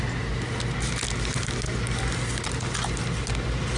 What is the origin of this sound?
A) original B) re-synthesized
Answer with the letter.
A